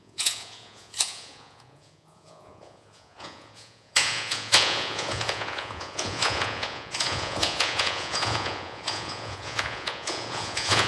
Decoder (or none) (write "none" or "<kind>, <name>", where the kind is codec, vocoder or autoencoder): vocoder, Vocos